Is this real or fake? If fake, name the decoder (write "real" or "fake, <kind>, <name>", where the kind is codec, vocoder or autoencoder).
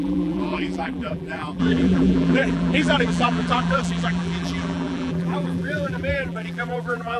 fake, vocoder, BigVGAN v2